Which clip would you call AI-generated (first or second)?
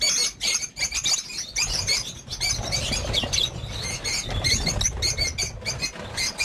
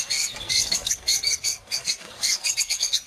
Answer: second